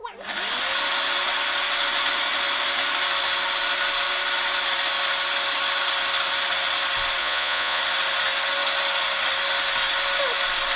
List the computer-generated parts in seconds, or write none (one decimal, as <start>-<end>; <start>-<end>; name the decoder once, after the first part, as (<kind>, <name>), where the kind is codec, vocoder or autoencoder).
7.2-7.8 (vocoder, Vocos)